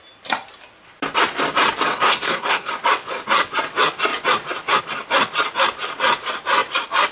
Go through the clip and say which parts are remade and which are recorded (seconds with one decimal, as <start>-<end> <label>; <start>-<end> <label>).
0.0-1.9 recorded; 1.9-2.7 remade; 2.7-7.1 recorded